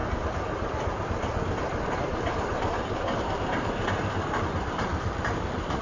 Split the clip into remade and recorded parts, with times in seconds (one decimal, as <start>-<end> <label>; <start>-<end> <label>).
0.0-1.0 remade; 1.0-2.3 recorded; 2.3-5.8 remade